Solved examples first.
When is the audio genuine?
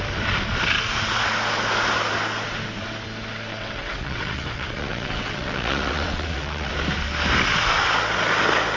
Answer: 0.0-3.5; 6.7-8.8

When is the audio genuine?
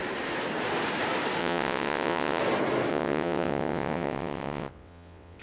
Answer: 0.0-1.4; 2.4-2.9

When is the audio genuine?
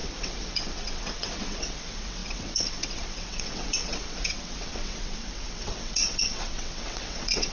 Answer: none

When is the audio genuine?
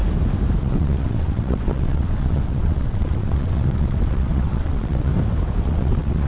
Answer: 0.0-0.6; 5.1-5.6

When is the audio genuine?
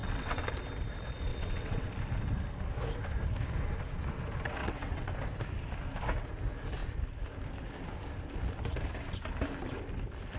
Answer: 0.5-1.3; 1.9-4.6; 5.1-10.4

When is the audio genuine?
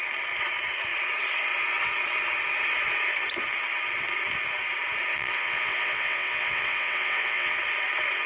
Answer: 0.0-5.1; 7.6-8.3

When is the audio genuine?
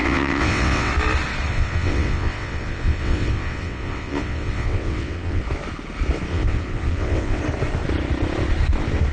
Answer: 0.9-1.5; 5.4-6.3; 7.4-9.1